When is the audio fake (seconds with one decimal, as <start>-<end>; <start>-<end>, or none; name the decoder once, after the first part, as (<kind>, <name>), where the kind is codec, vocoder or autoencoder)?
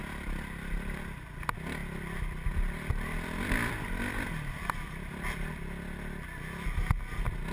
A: 0.0-1.2 (vocoder, BigVGAN v2); 1.8-5.5